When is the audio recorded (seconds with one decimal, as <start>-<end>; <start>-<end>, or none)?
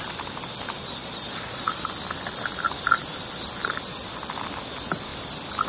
0.0-1.0; 1.6-5.7